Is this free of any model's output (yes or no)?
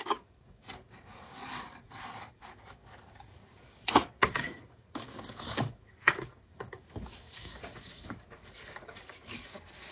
no